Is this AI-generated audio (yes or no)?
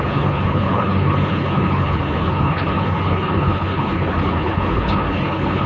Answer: yes